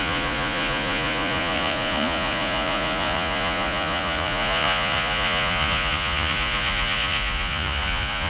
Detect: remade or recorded remade